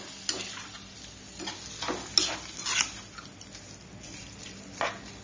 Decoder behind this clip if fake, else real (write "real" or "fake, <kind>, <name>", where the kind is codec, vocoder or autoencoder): real